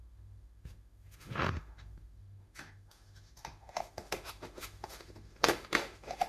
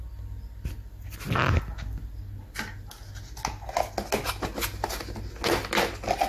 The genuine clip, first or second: second